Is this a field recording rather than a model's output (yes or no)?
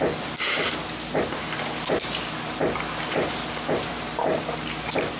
yes